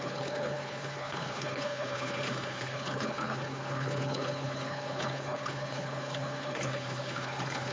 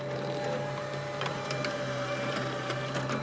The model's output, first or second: first